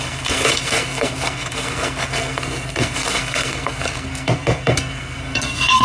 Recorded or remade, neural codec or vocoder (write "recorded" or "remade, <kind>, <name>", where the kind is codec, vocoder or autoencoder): remade, codec, SNAC